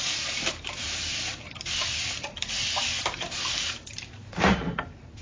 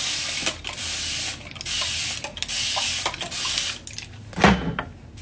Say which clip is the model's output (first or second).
first